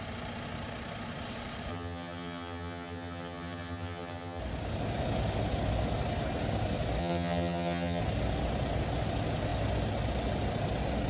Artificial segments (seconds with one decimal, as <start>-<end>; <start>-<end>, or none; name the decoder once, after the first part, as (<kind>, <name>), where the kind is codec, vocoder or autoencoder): 1.7-4.4 (vocoder, HiFi-GAN); 7.0-8.0

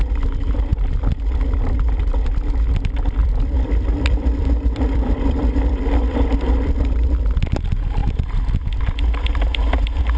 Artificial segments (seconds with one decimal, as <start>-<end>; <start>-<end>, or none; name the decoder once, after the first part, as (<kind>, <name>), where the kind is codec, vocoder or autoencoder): 0.7-1.2 (vocoder, BigVGAN v2); 3.2-6.7

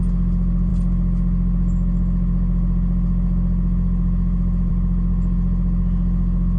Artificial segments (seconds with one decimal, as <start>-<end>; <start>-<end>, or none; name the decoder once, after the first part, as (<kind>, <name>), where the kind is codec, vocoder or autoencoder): none

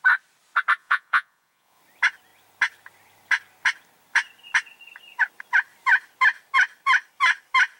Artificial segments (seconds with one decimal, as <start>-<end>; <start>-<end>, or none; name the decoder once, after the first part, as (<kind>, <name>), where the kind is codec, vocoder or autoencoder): 0.8-1.8 (vocoder, Vocos)

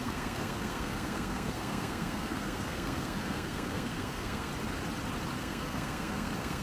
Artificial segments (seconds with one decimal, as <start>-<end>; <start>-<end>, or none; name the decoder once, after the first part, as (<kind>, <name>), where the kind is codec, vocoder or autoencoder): 0.0-4.5 (codec, SNAC); 5.4-6.6

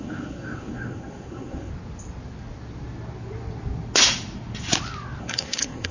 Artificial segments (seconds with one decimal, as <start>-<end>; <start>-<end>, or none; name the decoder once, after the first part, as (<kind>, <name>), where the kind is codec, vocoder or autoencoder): 0.0-1.7 (codec, SNAC); 5.2-5.9

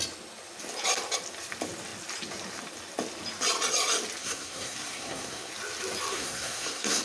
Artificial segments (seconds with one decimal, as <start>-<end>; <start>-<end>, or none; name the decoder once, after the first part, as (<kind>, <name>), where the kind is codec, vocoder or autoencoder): 4.2-5.5 (codec, SNAC); 6.1-7.0

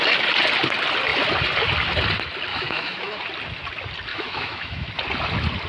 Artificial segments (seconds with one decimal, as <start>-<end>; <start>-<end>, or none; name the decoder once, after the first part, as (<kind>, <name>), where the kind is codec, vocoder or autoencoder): 2.5-3.2 (autoencoder, DAC-VAE); 4.1-4.9